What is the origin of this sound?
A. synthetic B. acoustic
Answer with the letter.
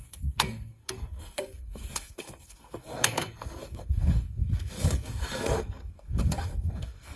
A